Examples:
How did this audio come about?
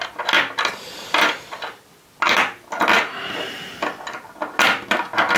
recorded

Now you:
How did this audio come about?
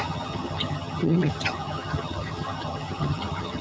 remade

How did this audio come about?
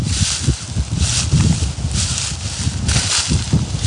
recorded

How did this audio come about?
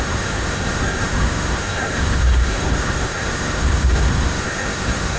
remade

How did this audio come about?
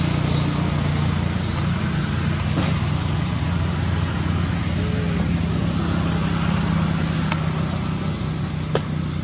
recorded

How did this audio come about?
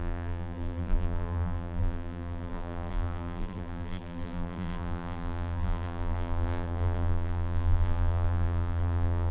remade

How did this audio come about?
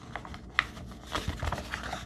recorded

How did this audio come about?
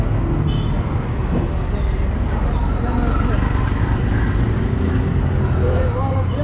recorded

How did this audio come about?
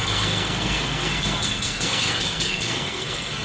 remade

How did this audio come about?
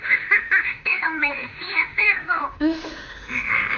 remade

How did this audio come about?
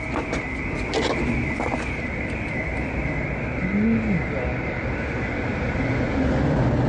recorded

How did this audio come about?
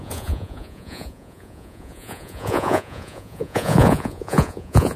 remade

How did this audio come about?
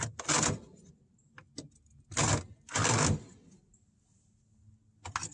recorded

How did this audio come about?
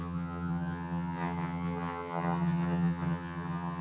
remade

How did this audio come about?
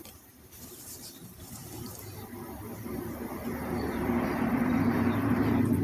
remade